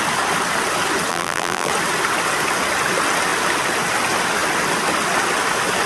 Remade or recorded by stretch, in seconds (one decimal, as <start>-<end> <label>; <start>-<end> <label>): 0.0-1.1 recorded; 1.1-1.7 remade; 1.7-5.9 recorded